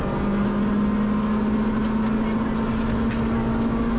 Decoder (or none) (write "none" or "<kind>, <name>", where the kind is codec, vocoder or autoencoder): none